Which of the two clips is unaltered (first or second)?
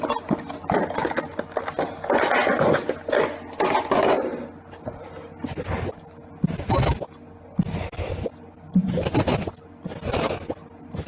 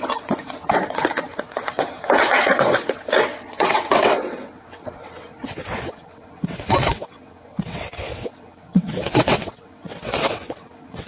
first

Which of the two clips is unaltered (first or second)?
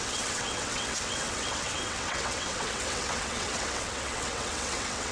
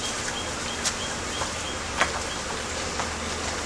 second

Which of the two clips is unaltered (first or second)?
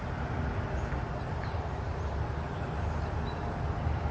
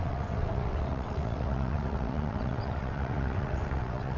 first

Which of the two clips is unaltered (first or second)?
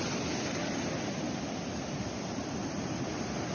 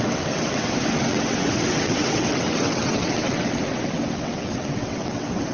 first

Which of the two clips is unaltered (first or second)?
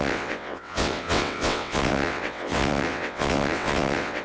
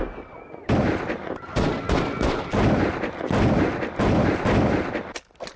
second